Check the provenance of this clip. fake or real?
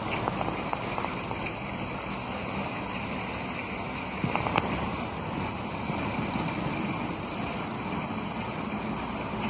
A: real